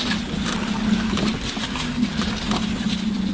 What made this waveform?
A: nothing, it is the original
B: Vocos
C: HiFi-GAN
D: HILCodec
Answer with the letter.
A